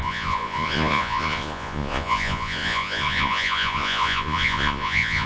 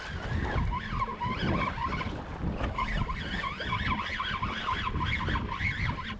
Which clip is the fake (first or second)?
first